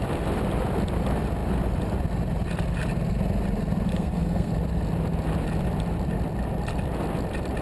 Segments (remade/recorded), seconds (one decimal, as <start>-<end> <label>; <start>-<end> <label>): 0.0-3.9 recorded; 3.9-4.5 remade; 4.5-7.6 recorded